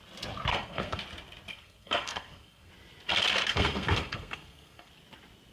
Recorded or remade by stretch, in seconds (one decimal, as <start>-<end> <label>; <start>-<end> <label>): 0.0-0.5 recorded; 0.5-1.0 remade; 1.0-1.5 recorded; 1.5-2.7 remade; 2.7-3.5 recorded; 3.5-4.9 remade; 4.9-5.5 recorded